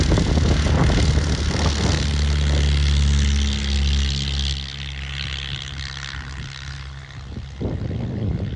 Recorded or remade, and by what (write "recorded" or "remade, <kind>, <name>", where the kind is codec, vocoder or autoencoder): recorded